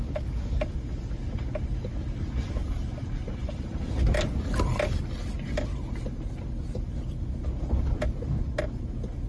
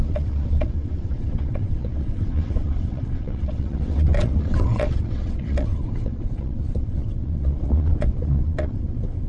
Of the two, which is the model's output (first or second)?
second